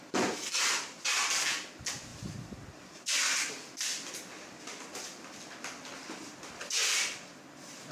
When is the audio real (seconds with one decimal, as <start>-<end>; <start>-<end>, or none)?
0.0-7.9

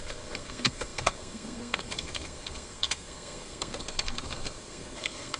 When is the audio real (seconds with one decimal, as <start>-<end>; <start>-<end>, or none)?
none